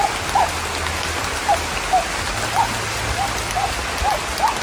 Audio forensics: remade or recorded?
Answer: recorded